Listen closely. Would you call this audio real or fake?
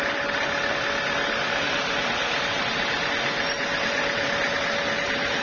real